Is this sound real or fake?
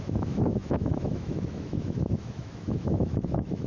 fake